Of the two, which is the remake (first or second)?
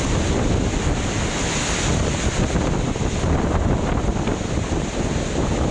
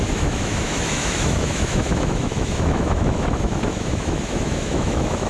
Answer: second